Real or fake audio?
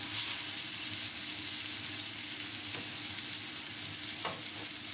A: real